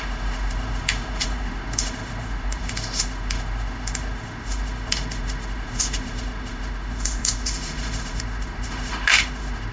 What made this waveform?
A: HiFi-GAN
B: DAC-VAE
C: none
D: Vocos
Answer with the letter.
B